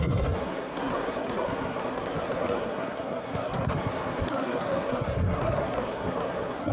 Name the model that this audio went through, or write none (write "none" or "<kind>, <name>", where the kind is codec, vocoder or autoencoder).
codec, SNAC